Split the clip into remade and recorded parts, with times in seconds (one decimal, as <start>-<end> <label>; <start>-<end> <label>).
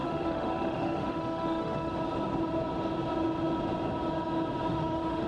0.0-1.9 remade; 1.9-4.7 recorded; 4.7-5.3 remade